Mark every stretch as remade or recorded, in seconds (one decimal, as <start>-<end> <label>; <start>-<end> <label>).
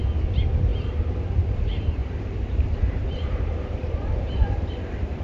0.0-2.0 recorded; 2.0-5.2 remade